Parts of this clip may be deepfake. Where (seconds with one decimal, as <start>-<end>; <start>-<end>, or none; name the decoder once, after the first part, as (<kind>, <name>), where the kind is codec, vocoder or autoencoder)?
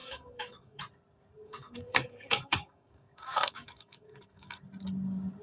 0.0-0.8 (codec, DAC); 1.4-4.6